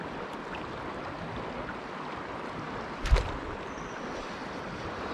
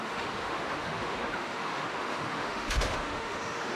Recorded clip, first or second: first